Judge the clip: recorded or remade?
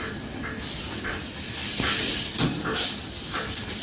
recorded